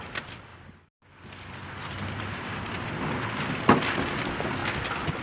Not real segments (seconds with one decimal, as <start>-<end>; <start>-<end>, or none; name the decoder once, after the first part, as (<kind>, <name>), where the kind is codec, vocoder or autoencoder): 0.0-0.5 (vocoder, BigVGAN v2); 2.2-4.6